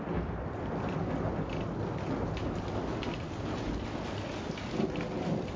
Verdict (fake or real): real